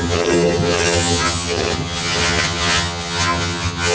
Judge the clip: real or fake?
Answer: fake